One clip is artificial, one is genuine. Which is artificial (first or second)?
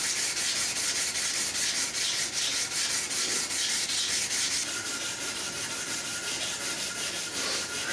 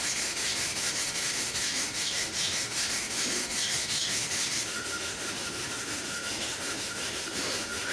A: second